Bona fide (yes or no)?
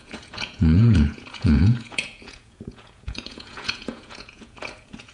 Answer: no